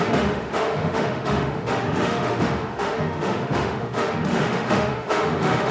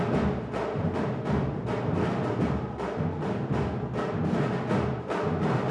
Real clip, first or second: second